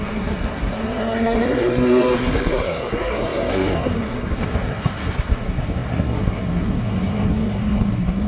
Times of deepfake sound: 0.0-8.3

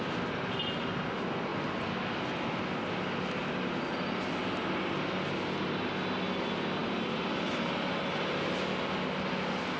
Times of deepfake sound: none

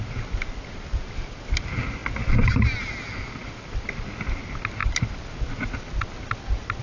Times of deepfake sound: none

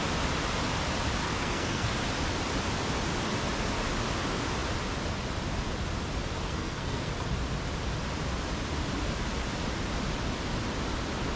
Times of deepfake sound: 1.2-1.9; 6.4-7.1

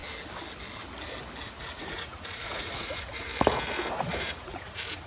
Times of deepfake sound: 1.6-3.3; 3.9-5.1

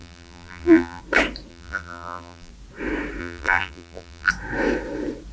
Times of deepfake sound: 0.0-1.0; 1.5-2.5; 3.2-4.3

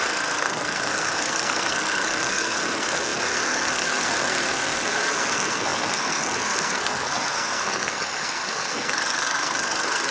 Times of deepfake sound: 0.0-10.1

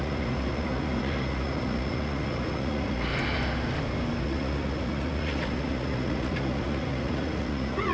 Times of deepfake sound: 0.0-3.1; 4.2-7.9